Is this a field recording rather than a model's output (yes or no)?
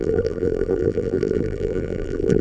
no